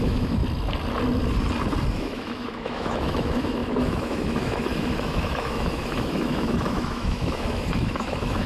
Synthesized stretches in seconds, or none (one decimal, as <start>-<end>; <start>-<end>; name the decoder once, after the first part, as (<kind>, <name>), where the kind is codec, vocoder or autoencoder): 0.0-0.4 (autoencoder, DAC-VAE); 1.9-8.5